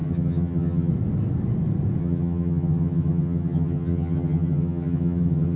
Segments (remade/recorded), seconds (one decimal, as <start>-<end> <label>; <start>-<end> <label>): 0.0-0.9 remade; 0.9-2.0 recorded; 2.0-5.6 remade